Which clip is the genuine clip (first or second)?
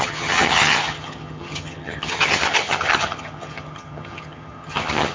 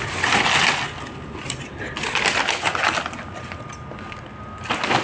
second